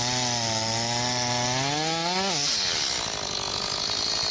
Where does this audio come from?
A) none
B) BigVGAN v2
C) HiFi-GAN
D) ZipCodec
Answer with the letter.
A